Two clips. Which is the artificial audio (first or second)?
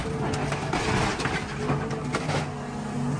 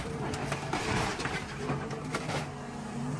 second